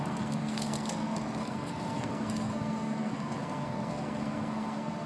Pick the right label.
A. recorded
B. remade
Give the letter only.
B